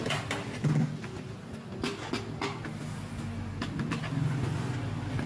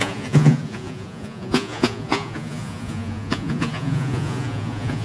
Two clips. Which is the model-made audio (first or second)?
second